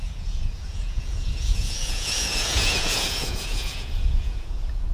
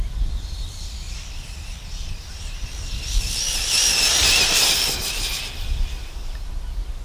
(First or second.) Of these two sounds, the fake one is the first